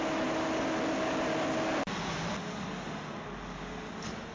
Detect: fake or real real